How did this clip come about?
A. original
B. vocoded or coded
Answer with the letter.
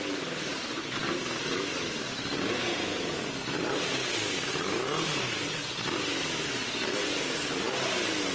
A